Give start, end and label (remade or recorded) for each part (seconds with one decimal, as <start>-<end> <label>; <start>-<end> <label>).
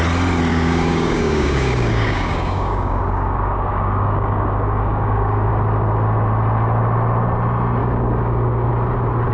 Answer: 0.0-0.5 recorded; 0.5-5.5 remade; 5.5-7.8 recorded; 7.8-8.7 remade; 8.7-9.3 recorded